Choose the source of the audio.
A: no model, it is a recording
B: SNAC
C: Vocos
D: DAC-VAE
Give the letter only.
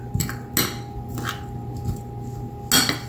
A